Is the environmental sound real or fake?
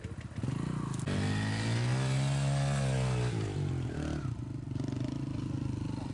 real